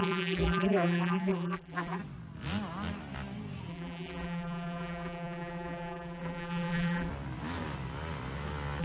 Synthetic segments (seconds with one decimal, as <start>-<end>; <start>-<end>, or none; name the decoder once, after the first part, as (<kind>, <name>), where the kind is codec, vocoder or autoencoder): 0.0-2.0 (vocoder, BigVGAN v2); 3.7-7.1